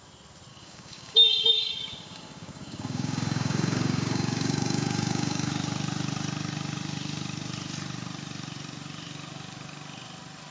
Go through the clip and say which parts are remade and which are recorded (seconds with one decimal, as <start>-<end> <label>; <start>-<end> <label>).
0.0-0.5 recorded; 0.5-5.5 remade; 5.5-10.5 recorded